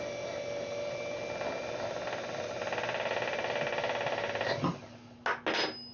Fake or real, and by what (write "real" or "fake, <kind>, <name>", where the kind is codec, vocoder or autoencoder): real